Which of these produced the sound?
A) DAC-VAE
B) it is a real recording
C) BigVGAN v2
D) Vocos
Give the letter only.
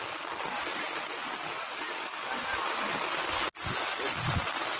B